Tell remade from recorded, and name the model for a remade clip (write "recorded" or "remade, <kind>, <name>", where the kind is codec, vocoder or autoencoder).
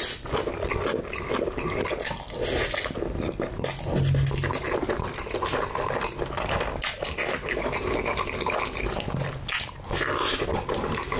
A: recorded